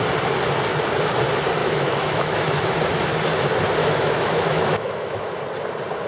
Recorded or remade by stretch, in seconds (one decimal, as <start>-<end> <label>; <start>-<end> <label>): 0.0-1.6 recorded; 1.6-2.6 remade; 2.6-3.8 recorded; 3.8-5.4 remade; 5.4-6.1 recorded